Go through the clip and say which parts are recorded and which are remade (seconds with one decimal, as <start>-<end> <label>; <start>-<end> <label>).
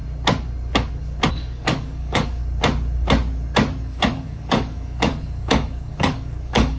0.0-1.3 recorded; 1.3-2.4 remade; 2.4-3.8 recorded; 3.8-6.8 remade